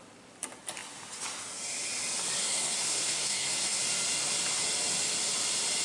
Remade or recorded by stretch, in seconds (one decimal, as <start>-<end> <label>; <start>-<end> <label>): 0.0-2.4 recorded; 2.4-3.8 remade; 3.8-5.8 recorded